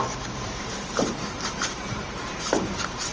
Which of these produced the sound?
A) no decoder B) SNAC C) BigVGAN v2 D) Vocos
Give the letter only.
C